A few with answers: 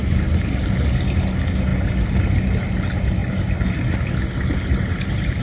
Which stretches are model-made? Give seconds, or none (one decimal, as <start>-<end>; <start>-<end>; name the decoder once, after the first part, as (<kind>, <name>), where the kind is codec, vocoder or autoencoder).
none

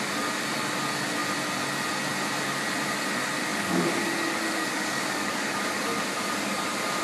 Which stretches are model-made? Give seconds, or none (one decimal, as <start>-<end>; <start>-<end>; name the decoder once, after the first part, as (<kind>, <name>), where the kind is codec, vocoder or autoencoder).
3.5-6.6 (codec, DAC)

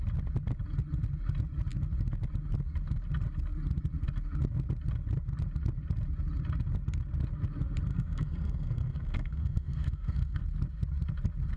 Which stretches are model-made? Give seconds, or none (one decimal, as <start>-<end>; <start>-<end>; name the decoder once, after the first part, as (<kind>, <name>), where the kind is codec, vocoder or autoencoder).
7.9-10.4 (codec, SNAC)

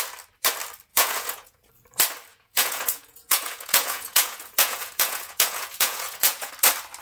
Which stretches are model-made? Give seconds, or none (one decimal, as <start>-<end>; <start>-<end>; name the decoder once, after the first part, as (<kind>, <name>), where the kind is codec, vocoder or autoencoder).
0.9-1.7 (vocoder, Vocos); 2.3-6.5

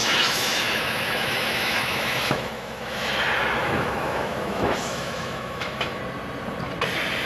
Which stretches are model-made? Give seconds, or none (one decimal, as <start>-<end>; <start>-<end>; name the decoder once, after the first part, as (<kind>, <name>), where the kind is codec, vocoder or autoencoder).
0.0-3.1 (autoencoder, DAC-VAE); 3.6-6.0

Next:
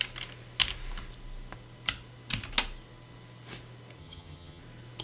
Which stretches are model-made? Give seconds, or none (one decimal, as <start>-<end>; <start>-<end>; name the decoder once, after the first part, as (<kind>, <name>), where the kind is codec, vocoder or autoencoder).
4.0-4.6 (vocoder, HiFi-GAN)

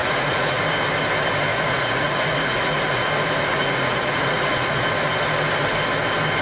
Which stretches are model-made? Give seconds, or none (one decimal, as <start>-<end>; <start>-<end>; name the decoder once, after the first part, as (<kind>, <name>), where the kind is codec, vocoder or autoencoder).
0.0-0.6 (vocoder, Vocos); 1.5-3.1; 3.5-4.9

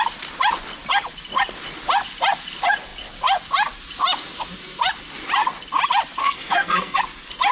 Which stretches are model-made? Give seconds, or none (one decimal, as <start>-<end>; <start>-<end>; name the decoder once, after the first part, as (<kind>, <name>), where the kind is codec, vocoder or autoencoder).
6.2-7.0 (codec, SNAC)